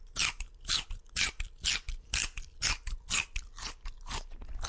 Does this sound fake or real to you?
real